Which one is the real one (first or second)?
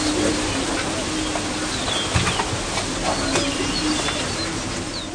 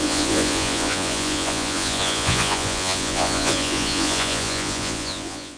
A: first